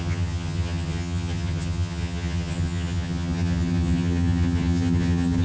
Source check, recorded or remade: remade